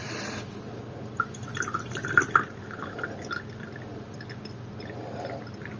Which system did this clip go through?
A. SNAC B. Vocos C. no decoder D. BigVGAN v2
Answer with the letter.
C